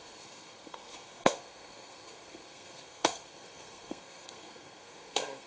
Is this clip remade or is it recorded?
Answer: remade